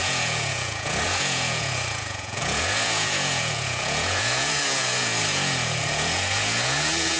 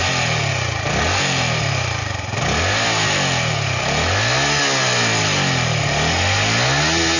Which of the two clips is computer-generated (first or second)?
first